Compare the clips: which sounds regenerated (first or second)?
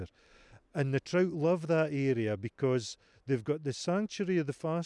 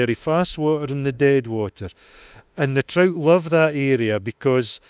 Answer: second